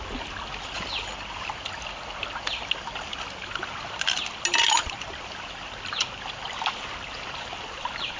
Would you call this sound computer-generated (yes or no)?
no